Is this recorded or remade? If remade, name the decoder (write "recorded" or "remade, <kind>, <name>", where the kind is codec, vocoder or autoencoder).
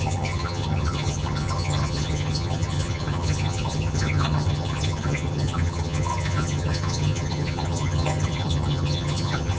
remade, vocoder, HiFi-GAN